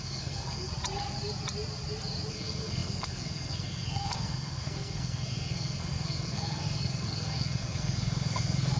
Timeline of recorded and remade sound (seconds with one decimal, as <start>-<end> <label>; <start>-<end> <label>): 0.0-0.7 remade; 0.7-2.3 recorded; 2.3-8.8 remade